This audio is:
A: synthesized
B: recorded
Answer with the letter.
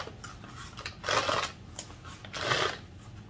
B